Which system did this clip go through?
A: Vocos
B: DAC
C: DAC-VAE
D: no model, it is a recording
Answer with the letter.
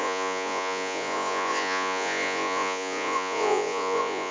A